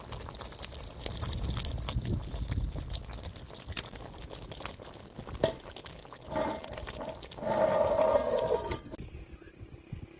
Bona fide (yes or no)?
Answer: yes